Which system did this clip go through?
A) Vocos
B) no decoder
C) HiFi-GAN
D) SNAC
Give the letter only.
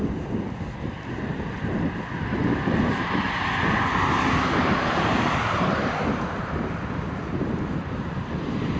B